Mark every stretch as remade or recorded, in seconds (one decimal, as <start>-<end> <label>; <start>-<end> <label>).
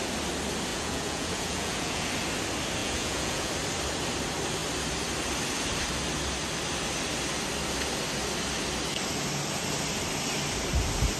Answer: 0.0-0.7 recorded; 0.7-2.1 remade; 2.1-2.8 recorded; 2.8-3.5 remade; 3.5-11.2 recorded